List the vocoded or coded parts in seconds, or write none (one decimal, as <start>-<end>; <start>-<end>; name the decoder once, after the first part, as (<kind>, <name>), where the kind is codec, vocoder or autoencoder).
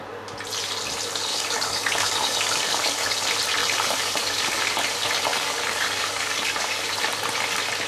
1.3-3.1 (codec, DAC); 3.6-4.6; 5.3-6.8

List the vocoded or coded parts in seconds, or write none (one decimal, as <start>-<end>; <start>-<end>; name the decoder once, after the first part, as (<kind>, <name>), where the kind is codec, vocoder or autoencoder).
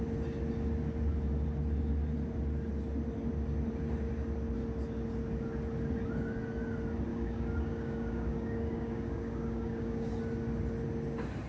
7.1-10.1 (codec, DAC)